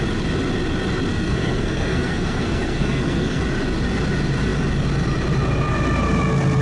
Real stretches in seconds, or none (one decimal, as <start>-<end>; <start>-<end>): 0.0-1.1; 3.4-6.6